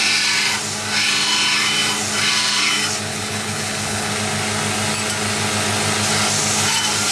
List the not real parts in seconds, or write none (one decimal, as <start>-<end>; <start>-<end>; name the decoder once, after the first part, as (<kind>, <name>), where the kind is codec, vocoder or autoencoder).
3.1-4.1 (codec, HILCodec)